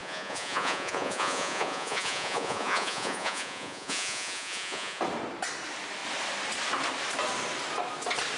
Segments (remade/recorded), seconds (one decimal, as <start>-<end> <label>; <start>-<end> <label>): 0.0-5.0 remade; 5.0-8.4 recorded